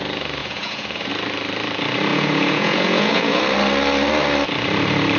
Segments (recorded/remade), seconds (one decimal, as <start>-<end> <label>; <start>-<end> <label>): 0.0-0.4 recorded; 0.4-1.1 remade; 1.1-2.1 recorded; 2.1-3.4 remade; 3.4-5.2 recorded